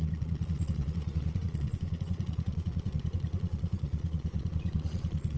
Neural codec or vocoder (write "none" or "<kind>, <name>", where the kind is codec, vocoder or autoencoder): vocoder, Vocos